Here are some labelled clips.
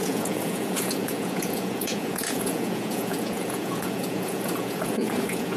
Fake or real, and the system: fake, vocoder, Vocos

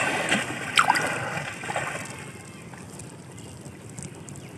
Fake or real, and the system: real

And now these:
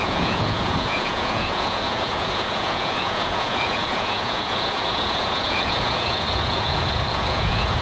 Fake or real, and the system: fake, vocoder, Vocos